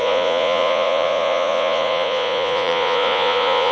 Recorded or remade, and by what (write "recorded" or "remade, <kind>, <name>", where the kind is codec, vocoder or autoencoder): remade, vocoder, Vocos